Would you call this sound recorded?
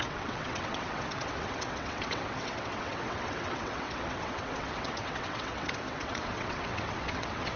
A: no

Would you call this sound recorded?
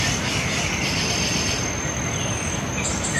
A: yes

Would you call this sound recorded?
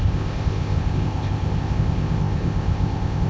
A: no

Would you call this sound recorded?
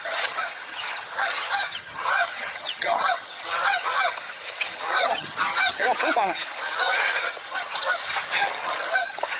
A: no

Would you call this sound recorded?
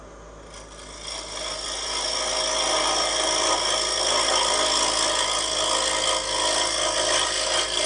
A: yes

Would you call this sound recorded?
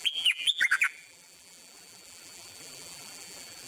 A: no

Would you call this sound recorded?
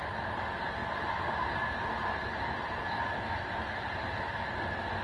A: yes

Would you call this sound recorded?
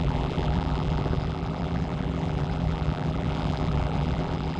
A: no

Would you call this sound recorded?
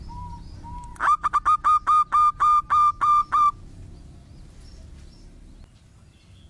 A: yes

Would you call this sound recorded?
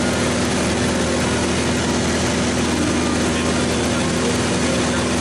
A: yes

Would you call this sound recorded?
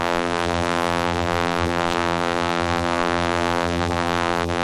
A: no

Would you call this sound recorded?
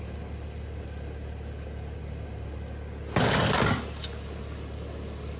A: yes